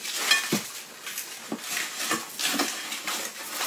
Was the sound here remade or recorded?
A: recorded